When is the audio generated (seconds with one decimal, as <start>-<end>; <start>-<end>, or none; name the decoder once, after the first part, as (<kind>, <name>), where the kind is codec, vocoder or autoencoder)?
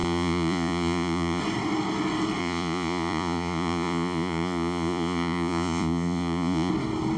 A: 0.0-1.4 (vocoder, Vocos); 2.4-6.7